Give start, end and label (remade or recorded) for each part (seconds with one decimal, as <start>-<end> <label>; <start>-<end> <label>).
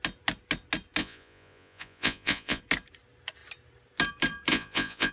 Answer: 0.0-1.0 recorded; 1.0-2.6 remade; 2.6-4.5 recorded; 4.5-5.1 remade